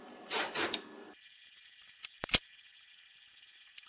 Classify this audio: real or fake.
fake